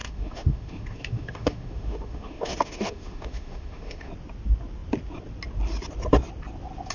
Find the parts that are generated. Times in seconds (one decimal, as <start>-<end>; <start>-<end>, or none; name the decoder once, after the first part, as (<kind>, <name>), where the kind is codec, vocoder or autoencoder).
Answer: 0.0-4.1 (autoencoder, DAC-VAE)